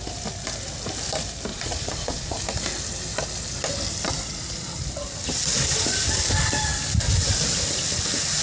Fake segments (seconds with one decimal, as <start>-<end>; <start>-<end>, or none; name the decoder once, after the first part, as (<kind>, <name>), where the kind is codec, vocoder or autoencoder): 1.5-2.4 (vocoder, Vocos)